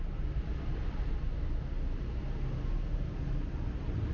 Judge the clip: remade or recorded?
recorded